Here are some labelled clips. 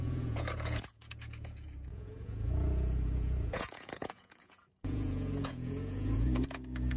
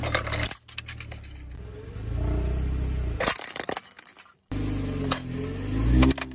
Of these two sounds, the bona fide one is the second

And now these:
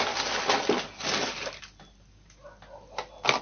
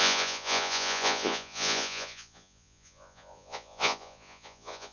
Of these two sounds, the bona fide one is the first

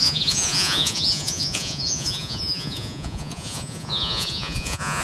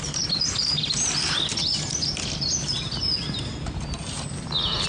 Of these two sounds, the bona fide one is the second